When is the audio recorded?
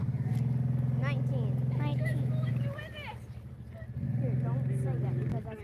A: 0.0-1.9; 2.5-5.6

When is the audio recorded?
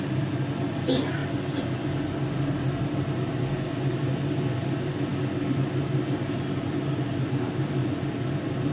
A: 0.0-8.7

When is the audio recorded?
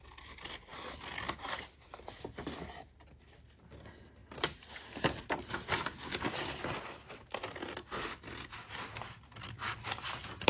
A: 0.0-10.5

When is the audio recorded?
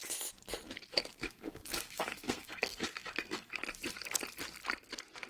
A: 0.0-0.9; 3.6-5.3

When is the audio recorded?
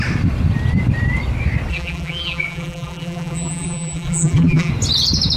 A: 0.0-1.7; 4.7-5.4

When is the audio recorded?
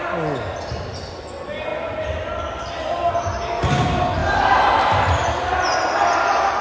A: 0.0-4.2; 5.0-6.6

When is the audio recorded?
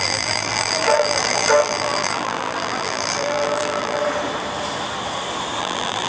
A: 4.0-5.6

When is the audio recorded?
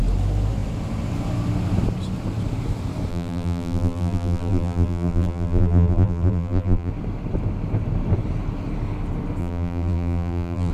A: 0.0-3.1; 6.9-9.4